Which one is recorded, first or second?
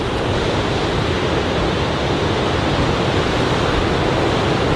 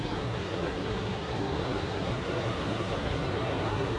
first